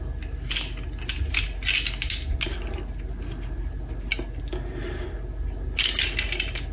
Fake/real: real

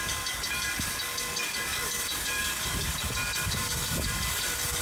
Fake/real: fake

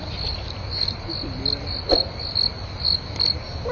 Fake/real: real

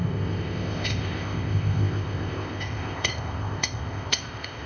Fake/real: fake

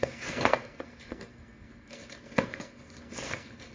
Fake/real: fake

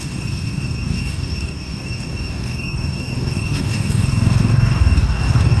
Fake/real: fake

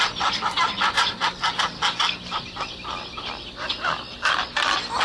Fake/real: real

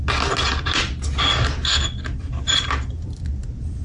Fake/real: real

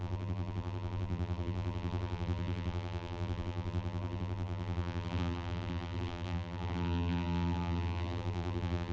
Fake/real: fake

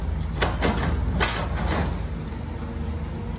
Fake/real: real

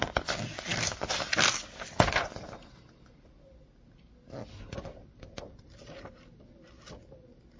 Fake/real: real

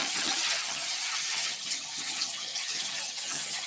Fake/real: fake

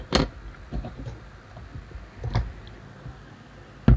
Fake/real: real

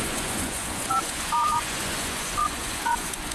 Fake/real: fake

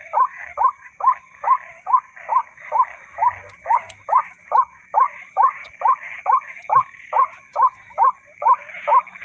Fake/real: real